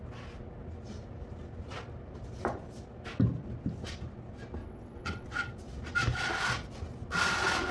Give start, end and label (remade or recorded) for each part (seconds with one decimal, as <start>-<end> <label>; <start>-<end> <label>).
0.0-4.6 recorded; 4.6-5.5 remade; 5.5-7.7 recorded